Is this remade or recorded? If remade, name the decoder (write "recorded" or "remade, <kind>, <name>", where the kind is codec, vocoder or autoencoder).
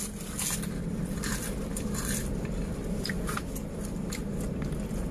remade, vocoder, BigVGAN v2